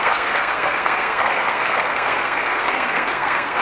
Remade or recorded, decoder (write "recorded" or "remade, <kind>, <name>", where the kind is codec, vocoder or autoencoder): remade, codec, SNAC